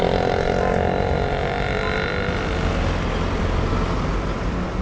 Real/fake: real